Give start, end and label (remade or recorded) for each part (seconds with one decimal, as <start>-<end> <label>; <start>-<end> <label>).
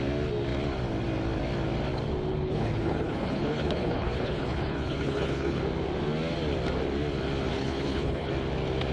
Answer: 0.0-2.3 recorded; 2.3-5.6 remade; 5.6-7.5 recorded; 7.5-8.3 remade; 8.3-8.9 recorded